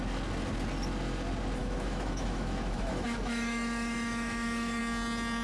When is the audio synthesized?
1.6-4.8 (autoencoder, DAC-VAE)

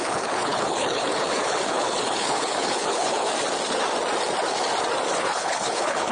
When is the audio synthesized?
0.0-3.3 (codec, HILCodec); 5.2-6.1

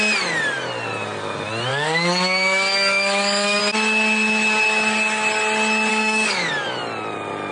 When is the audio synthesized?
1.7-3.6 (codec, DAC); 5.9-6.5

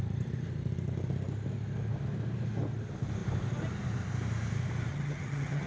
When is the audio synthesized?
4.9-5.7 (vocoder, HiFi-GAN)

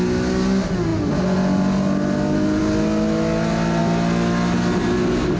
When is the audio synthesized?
none

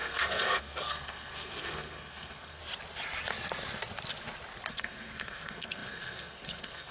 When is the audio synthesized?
0.0-2.6 (codec, SNAC); 4.7-6.9

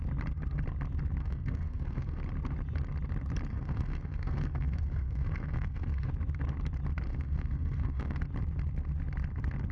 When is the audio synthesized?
1.2-2.2 (codec, SNAC); 3.5-6.1; 7.1-8.2

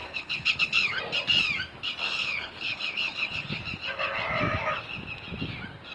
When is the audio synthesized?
0.0-1.0 (codec, HILCodec); 2.0-3.6